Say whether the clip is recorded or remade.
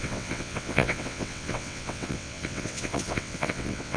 remade